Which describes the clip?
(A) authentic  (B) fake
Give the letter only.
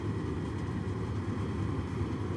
A